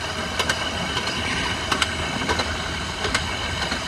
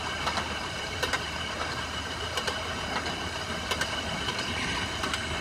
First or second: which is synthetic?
second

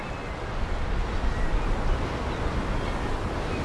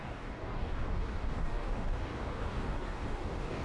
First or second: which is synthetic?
second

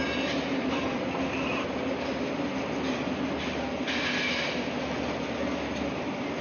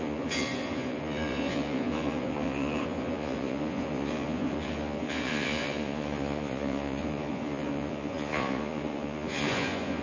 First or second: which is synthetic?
second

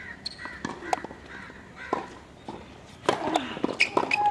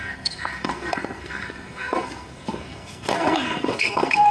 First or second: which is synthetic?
second